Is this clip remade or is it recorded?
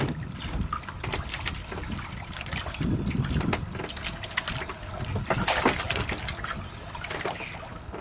recorded